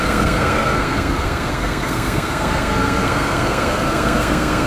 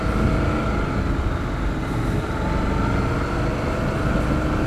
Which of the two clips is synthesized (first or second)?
first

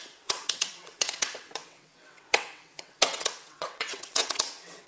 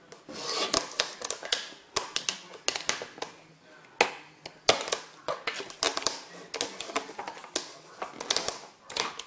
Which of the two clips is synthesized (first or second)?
first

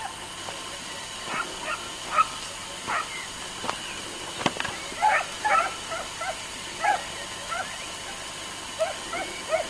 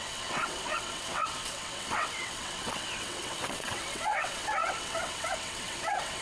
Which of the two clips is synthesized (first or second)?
second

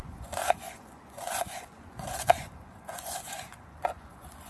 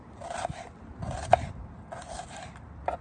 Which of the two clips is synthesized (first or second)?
first